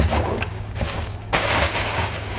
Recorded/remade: remade